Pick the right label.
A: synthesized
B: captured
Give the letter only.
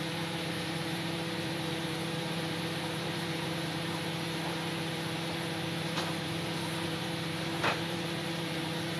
A